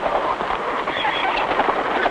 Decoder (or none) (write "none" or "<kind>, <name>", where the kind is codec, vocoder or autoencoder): none